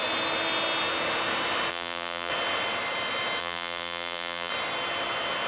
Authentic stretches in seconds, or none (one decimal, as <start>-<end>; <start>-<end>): 0.0-1.7; 2.3-3.4; 4.5-5.5